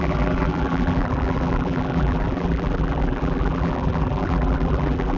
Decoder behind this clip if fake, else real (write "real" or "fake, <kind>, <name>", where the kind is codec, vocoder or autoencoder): fake, vocoder, BigVGAN v2